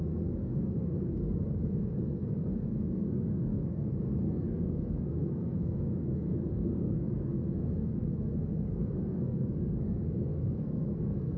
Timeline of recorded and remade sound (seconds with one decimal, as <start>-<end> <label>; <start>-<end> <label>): 0.0-11.4 remade